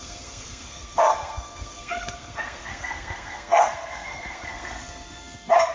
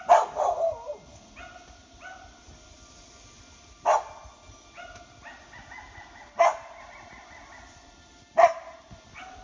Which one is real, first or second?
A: second